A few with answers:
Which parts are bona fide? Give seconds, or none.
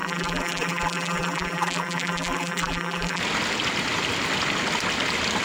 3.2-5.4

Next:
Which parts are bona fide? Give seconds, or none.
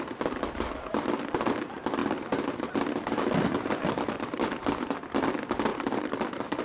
0.0-2.0; 4.5-5.7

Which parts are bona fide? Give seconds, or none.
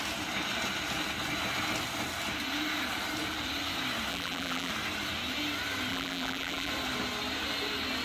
0.0-4.1; 4.7-5.9; 6.7-8.0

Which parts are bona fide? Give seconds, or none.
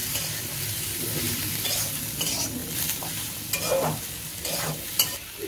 2.0-2.6; 3.6-4.3